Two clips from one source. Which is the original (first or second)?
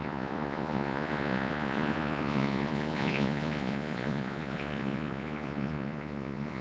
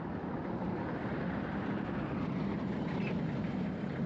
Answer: second